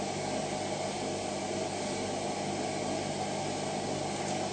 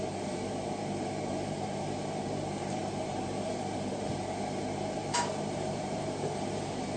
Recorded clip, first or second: first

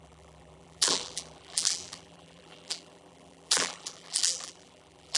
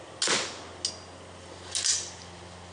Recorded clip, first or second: second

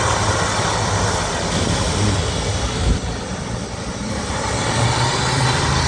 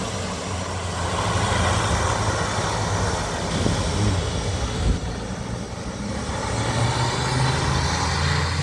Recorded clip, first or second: second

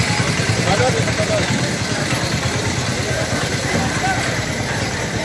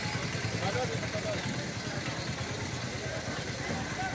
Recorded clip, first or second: second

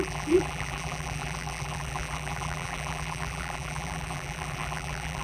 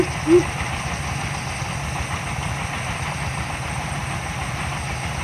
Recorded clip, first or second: second